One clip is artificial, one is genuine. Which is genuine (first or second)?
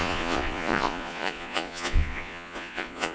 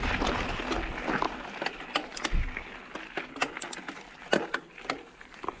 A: second